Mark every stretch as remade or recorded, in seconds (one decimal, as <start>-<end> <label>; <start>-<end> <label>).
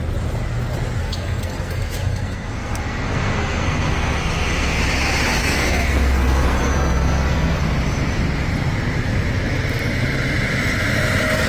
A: 0.0-1.0 recorded; 1.0-4.8 remade; 4.8-5.4 recorded; 5.4-7.6 remade; 7.6-11.5 recorded